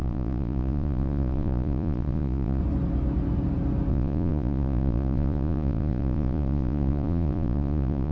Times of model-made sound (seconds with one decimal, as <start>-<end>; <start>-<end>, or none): 0.0-2.6; 3.9-8.1